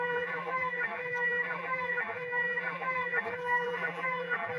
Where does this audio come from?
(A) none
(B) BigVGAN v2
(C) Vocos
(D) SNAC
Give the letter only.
B